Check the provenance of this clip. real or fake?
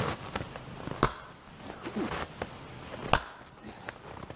real